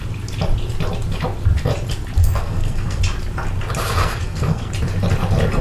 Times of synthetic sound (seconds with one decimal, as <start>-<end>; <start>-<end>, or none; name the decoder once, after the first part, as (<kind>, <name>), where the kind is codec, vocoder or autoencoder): 2.2-3.0 (codec, SNAC); 4.0-4.7

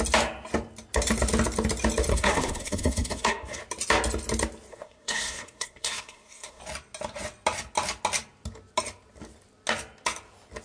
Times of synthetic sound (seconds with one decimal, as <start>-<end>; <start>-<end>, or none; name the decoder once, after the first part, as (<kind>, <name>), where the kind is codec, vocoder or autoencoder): 2.1-3.6 (codec, SNAC); 4.7-6.6

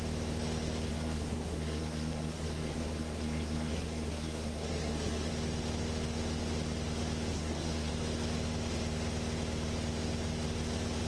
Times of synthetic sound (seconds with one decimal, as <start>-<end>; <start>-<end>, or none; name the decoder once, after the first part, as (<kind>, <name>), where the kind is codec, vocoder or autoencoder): 0.9-5.3 (codec, SNAC); 7.3-7.9

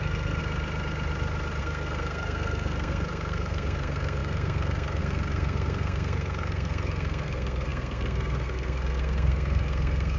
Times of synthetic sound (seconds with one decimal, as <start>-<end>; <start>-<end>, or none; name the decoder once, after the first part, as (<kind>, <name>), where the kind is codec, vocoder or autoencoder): 0.0-0.4 (codec, SNAC); 1.6-10.2